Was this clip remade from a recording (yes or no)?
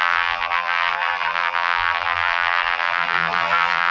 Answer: yes